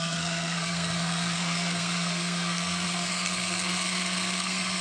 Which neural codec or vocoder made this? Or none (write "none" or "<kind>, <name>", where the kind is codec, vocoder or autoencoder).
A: codec, SNAC